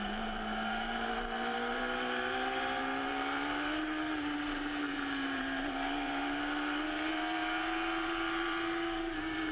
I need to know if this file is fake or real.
fake